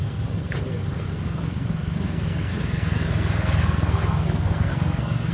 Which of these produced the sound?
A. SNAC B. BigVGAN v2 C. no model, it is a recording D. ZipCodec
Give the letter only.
A